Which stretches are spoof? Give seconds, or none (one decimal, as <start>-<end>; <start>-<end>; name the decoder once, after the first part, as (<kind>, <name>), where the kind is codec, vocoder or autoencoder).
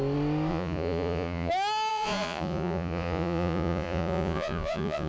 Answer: 0.5-1.5 (vocoder, Vocos); 1.9-5.1